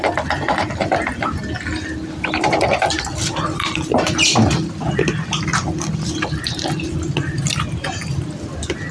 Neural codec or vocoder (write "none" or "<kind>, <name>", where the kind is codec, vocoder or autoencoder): none